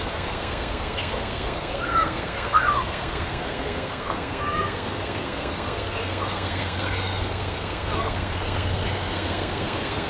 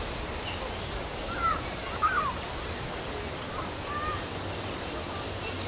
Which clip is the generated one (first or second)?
first